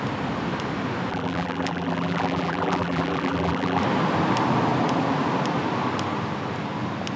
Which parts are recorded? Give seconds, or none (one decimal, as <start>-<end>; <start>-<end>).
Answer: 0.0-1.1; 3.8-7.2